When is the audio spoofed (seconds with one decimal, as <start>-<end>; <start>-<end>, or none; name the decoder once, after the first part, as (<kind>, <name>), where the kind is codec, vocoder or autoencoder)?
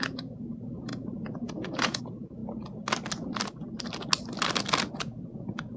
0.0-2.4 (vocoder, Vocos); 4.9-5.8